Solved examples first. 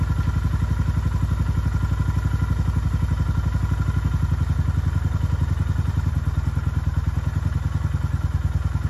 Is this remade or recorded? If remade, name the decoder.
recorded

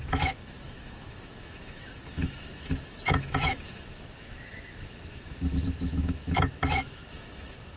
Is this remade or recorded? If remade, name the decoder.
remade, autoencoder, DAC-VAE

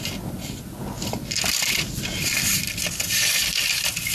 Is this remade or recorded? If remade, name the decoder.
recorded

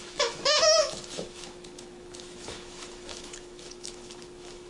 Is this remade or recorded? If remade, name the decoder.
remade, autoencoder, DAC-VAE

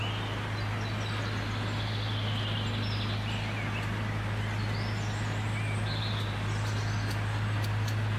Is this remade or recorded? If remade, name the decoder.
recorded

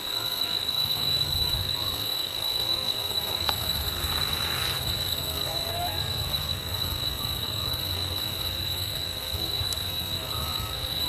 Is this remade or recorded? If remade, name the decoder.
remade, codec, SNAC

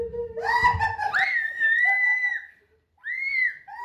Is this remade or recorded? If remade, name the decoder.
recorded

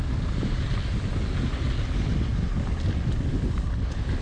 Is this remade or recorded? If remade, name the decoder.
recorded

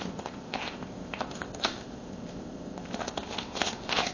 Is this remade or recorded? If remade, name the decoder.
remade, codec, ZipCodec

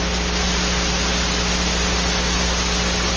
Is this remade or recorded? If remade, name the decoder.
recorded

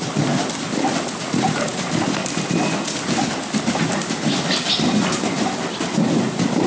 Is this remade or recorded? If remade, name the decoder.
recorded